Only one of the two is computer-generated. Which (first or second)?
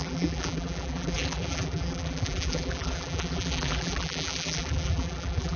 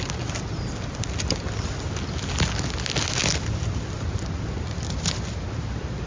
first